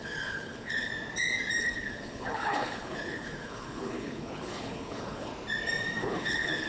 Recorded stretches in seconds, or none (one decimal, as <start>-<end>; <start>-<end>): 0.9-1.6; 5.3-6.0